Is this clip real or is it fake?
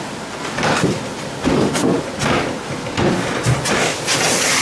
real